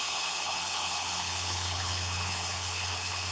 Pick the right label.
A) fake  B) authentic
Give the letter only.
A